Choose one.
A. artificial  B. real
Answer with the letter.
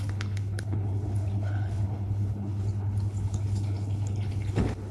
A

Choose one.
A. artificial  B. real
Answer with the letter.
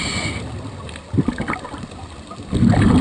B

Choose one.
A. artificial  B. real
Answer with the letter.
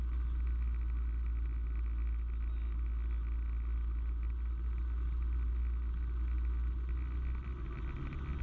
B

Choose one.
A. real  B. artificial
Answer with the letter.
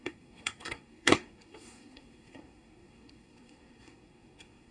B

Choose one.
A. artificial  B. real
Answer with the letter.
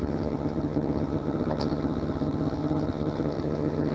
A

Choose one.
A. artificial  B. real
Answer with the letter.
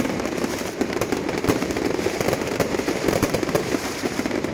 A